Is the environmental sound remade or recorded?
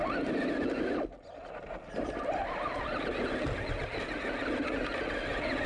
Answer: recorded